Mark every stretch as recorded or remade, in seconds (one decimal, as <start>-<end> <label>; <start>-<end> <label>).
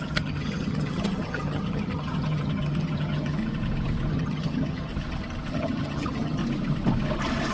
0.0-3.4 remade; 3.4-4.1 recorded; 4.1-4.9 remade; 4.9-5.5 recorded; 5.5-6.4 remade; 6.4-7.5 recorded